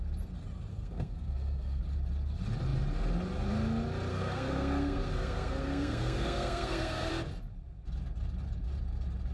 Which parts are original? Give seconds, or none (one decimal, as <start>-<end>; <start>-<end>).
0.0-0.7; 1.8-4.1; 7.1-9.3